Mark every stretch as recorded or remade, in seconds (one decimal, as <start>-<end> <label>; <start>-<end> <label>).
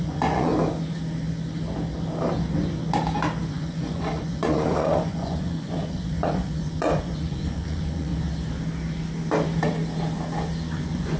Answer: 0.0-0.5 remade; 0.5-3.5 recorded; 3.5-8.1 remade; 8.1-10.7 recorded; 10.7-11.2 remade